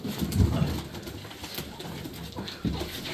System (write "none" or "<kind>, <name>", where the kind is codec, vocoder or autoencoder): none